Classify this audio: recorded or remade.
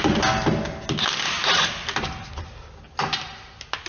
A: recorded